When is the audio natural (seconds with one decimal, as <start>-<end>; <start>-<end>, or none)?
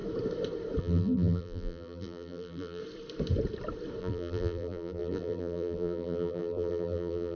0.0-0.8; 2.8-4.0